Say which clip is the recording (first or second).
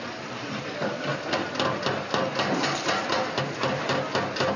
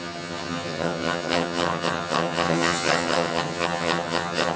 first